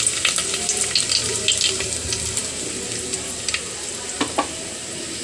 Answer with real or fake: real